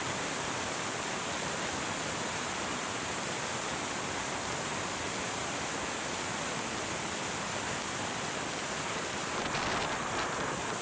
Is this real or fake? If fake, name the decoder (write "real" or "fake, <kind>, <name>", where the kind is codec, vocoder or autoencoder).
real